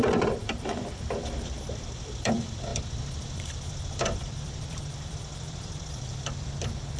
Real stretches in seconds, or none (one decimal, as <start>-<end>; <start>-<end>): none